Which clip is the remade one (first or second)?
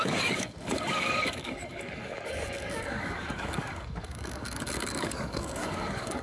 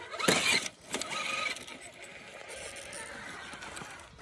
first